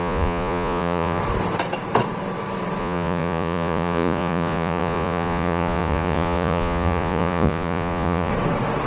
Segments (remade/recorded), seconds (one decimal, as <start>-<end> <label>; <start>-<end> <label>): 0.0-1.2 remade; 1.2-2.8 recorded; 2.8-8.3 remade; 8.3-8.9 recorded